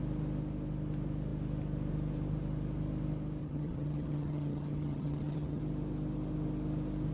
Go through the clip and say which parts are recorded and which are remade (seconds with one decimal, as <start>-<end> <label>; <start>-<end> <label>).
0.0-3.4 recorded; 3.4-5.6 remade; 5.6-7.1 recorded